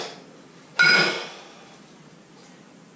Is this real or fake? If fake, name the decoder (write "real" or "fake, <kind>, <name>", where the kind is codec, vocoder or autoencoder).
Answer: real